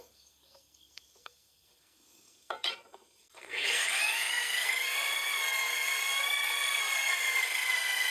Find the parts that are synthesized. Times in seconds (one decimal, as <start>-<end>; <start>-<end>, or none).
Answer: 0.0-8.1